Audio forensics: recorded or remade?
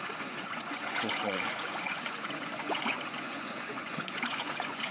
remade